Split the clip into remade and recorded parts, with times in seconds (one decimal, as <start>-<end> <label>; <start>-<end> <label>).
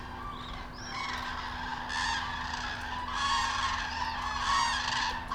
0.0-5.3 recorded